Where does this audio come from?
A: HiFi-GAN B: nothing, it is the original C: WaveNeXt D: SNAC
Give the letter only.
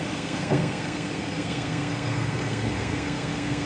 D